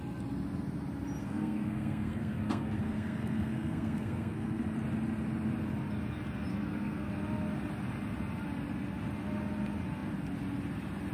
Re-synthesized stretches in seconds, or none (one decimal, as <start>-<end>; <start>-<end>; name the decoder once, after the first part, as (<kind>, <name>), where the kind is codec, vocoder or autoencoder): 1.2-4.6 (codec, SNAC); 6.5-7.1

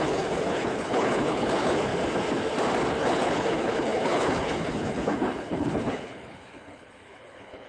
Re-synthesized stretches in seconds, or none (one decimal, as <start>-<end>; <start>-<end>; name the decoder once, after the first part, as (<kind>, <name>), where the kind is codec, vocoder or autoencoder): 0.0-1.9 (codec, HILCodec); 3.0-7.7

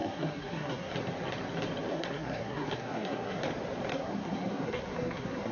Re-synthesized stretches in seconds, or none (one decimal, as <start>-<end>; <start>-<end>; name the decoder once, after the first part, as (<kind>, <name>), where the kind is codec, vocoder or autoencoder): 0.0-0.9 (codec, SNAC); 1.9-3.4; 3.9-5.5

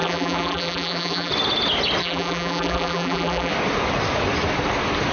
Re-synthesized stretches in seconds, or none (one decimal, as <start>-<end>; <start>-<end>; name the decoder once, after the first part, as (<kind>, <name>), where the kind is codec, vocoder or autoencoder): 0.0-1.3 (vocoder, BigVGAN v2); 2.0-3.5

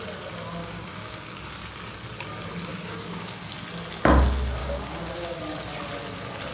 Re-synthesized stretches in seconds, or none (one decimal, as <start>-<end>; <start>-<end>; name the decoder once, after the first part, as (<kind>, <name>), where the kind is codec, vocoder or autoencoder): 0.6-1.4 (codec, DAC); 2.7-3.4; 4.6-5.4